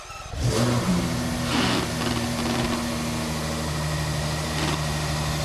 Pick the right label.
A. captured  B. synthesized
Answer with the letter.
A